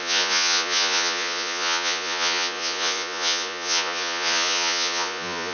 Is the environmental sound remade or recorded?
remade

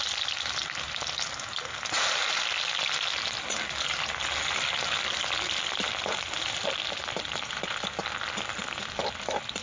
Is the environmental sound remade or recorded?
recorded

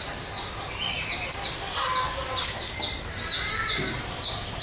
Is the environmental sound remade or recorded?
recorded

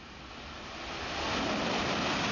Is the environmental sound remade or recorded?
recorded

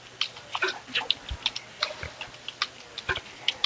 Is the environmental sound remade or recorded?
recorded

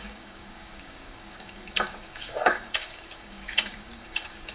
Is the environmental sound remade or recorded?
remade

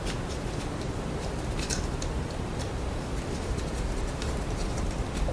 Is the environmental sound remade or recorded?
remade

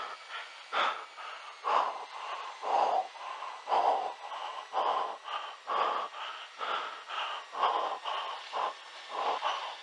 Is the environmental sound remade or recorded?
recorded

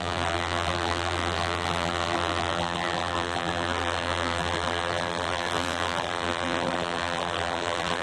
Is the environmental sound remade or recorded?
remade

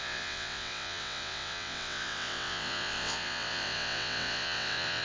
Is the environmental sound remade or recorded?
remade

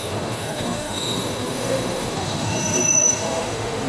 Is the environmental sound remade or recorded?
remade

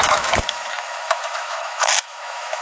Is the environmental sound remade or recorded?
remade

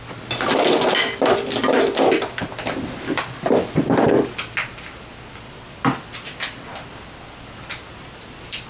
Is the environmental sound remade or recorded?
recorded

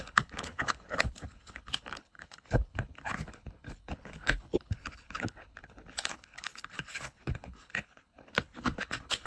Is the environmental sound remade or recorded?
remade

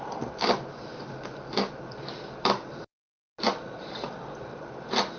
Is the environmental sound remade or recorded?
recorded